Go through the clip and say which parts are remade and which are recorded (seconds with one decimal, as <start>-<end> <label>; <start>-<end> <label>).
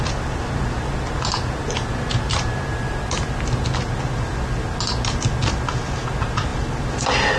0.0-7.4 recorded